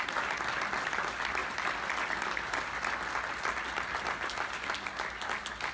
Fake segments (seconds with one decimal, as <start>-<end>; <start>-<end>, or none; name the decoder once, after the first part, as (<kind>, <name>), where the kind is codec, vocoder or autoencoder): none